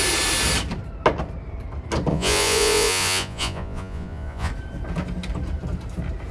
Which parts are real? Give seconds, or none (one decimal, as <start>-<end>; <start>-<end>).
0.0-2.1; 4.5-6.3